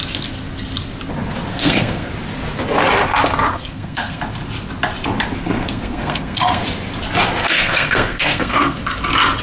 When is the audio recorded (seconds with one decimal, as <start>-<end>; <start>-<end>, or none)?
0.0-1.5; 2.1-3.5; 4.2-5.4; 6.6-7.4; 8.8-9.4